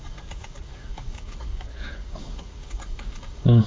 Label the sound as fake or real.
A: fake